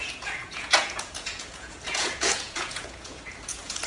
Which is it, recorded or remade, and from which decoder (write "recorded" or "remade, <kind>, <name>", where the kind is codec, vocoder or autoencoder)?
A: remade, vocoder, Vocos